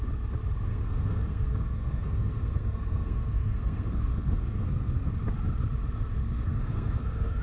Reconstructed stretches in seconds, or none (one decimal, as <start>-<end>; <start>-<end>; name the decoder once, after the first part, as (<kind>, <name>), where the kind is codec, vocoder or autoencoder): 0.7-5.1 (codec, SNAC); 6.2-7.4